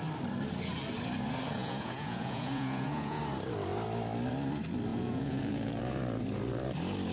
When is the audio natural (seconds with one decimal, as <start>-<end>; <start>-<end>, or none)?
0.0-1.6; 3.2-4.9; 5.8-7.1